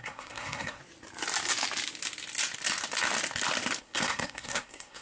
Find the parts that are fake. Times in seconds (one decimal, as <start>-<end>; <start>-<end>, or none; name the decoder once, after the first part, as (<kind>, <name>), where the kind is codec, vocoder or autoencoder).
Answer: 0.0-0.8 (codec, SNAC); 3.8-5.0